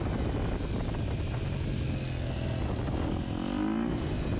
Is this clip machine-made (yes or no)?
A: no